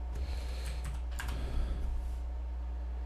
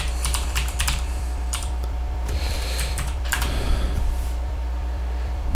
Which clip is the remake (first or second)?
second